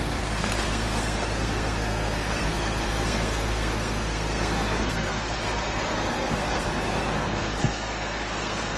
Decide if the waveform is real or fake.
fake